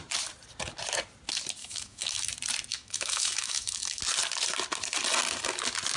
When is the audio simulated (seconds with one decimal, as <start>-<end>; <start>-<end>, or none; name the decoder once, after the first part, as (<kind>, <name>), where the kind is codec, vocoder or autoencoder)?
1.6-2.3 (autoencoder, DAC-VAE); 2.7-4.0